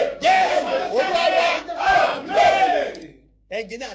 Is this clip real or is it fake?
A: fake